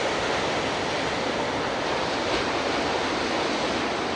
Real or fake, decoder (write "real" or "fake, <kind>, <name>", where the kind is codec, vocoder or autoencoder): real